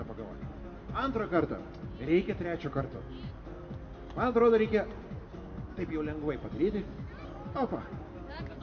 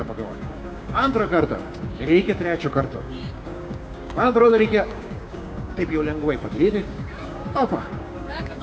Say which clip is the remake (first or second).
second